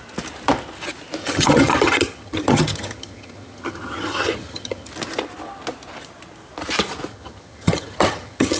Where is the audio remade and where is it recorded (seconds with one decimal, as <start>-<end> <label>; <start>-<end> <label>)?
0.0-1.2 recorded; 1.2-4.9 remade; 4.9-7.1 recorded; 7.1-8.6 remade